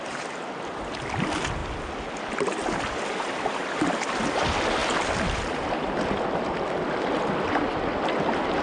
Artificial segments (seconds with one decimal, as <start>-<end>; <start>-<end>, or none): none